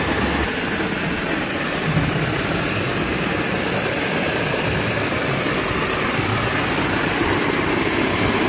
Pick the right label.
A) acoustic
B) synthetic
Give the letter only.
A